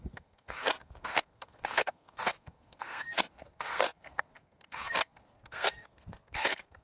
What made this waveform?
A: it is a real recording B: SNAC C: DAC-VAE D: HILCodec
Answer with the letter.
B